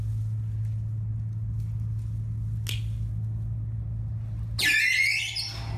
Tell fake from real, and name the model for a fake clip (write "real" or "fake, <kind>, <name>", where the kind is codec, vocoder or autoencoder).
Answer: real